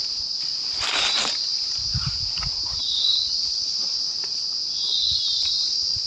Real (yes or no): yes